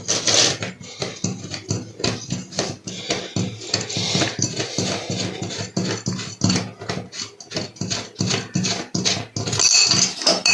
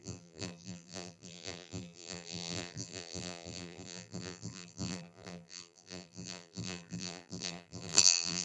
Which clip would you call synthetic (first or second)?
second